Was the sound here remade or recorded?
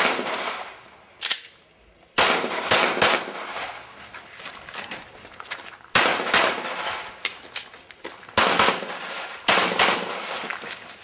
recorded